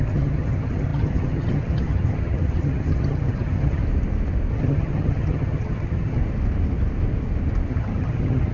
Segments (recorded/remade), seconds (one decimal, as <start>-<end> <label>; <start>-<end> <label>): 0.0-3.8 remade; 3.8-4.5 recorded; 4.5-6.2 remade; 6.2-7.7 recorded; 7.7-8.5 remade